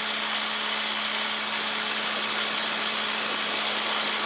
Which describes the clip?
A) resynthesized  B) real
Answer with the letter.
B